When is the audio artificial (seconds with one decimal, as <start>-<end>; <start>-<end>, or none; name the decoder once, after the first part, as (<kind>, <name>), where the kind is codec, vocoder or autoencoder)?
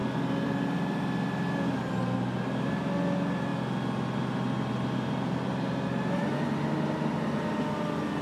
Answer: none